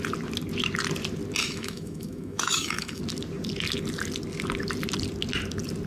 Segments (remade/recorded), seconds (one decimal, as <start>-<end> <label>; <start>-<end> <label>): 0.0-1.4 recorded; 1.4-3.0 remade; 3.0-5.9 recorded